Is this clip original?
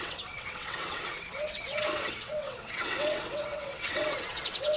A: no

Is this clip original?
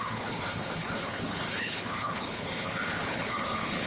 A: no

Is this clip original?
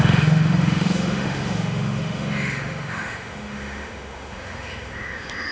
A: no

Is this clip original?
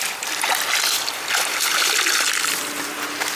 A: yes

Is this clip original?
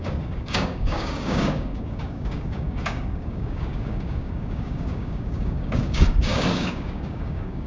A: no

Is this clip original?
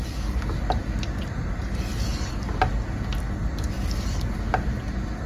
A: yes